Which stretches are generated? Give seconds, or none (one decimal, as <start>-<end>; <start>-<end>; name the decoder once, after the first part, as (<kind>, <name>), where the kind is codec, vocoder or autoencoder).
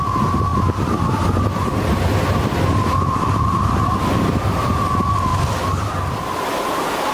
0.5-4.8 (vocoder, BigVGAN v2)